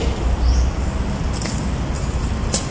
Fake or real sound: real